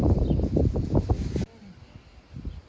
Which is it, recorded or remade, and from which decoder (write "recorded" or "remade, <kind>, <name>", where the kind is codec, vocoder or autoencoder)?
recorded